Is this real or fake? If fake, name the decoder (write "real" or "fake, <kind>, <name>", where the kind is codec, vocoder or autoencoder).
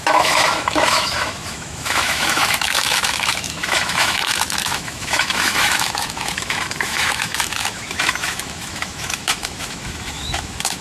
fake, autoencoder, DAC-VAE